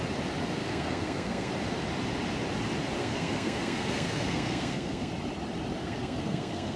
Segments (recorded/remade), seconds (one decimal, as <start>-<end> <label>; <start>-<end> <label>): 0.0-0.6 recorded; 0.6-1.5 remade; 1.5-3.0 recorded; 3.0-5.1 remade; 5.1-5.8 recorded; 5.8-6.8 remade

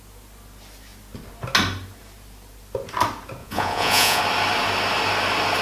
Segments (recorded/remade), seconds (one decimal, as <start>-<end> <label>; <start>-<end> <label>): 0.0-3.4 recorded; 3.4-4.2 remade; 4.2-5.6 recorded